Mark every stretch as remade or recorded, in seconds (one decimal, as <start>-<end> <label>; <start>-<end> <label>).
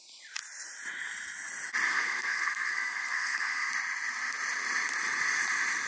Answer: 0.0-1.9 recorded; 1.9-3.7 remade; 3.7-5.9 recorded